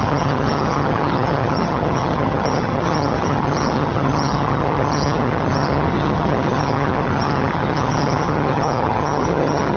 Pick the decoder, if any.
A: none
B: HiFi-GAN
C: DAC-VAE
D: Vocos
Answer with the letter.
B